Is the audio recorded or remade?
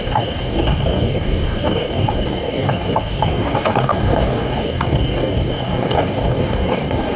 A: remade